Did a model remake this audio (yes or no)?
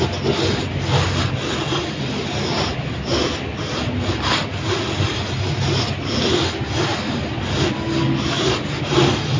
no